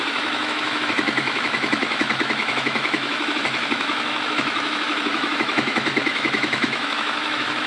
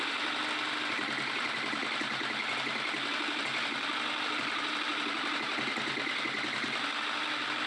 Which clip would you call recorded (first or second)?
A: second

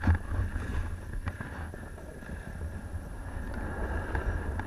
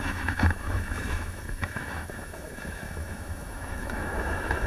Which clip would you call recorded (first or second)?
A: first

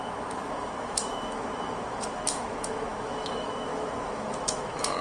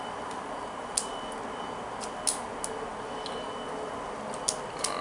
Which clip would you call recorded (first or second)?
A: second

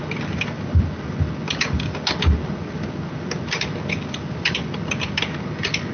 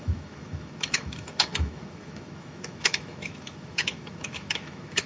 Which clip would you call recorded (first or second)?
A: first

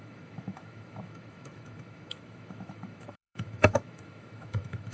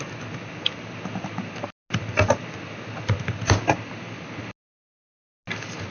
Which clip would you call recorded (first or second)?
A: second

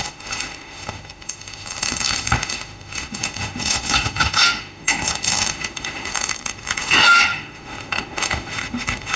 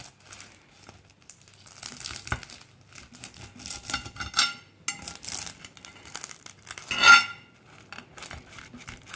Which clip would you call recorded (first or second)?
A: second